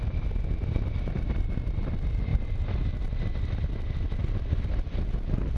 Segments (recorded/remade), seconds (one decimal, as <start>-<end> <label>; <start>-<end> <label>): 0.0-5.6 recorded